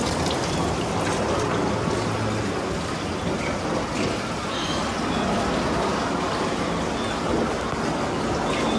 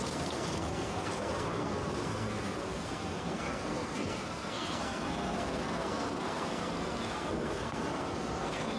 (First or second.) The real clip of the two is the first